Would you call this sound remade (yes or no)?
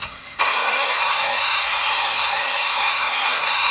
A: yes